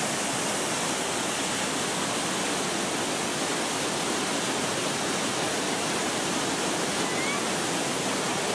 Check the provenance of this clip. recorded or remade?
recorded